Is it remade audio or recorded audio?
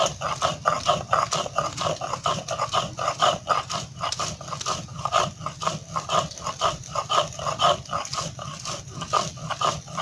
recorded